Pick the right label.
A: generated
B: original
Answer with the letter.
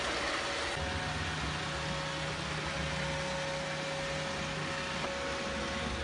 B